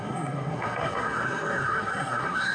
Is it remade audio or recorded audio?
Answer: remade